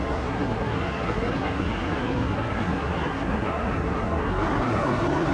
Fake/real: fake